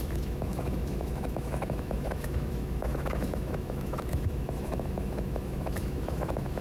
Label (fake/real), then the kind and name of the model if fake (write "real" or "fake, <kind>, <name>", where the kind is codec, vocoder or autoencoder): fake, autoencoder, DAC-VAE